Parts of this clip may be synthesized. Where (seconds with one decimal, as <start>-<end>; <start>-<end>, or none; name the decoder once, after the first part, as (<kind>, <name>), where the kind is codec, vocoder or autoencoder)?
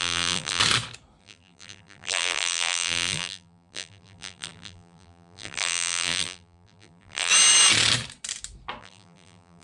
0.0-0.6 (vocoder, BigVGAN v2); 1.2-7.3; 8.8-9.6